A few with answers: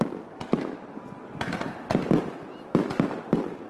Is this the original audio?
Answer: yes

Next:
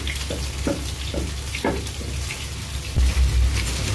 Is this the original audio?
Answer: yes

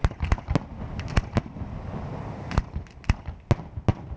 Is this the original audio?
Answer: yes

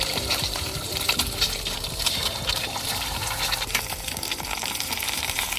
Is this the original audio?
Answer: no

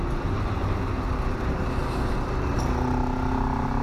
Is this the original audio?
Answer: yes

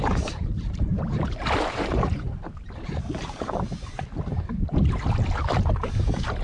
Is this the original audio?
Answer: no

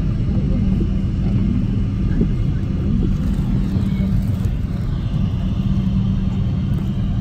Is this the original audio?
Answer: yes